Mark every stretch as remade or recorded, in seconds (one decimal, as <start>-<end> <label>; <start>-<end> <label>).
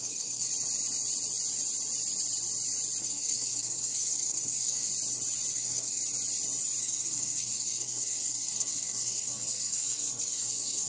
0.0-0.5 remade; 0.5-3.0 recorded; 3.0-4.9 remade; 4.9-5.5 recorded; 5.5-6.0 remade; 6.0-6.8 recorded; 6.8-10.9 remade